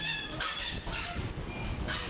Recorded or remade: remade